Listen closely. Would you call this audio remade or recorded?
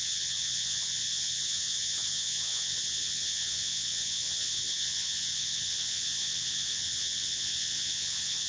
remade